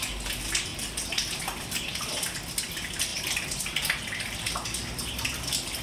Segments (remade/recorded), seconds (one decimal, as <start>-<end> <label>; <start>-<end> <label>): 0.0-5.8 recorded